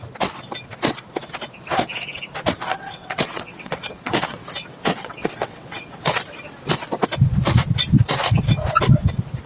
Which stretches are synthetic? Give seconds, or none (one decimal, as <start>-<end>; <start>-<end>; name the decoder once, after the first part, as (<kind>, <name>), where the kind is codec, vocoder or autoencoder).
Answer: 2.7-6.2 (vocoder, WaveNeXt)